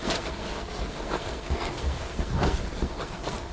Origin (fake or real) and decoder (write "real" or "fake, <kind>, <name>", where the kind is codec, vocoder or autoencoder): fake, codec, SNAC